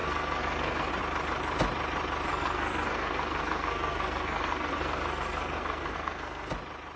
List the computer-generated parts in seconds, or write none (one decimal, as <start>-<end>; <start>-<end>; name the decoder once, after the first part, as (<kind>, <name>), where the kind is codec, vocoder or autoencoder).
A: 0.0-0.9 (codec, SNAC); 2.3-6.5